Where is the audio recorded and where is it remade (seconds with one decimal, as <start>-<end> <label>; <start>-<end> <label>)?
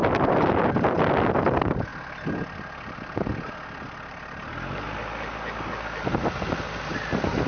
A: 0.0-7.5 recorded